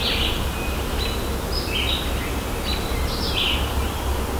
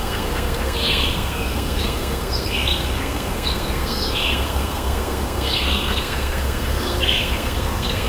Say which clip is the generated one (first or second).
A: second